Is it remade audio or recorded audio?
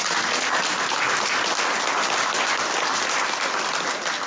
recorded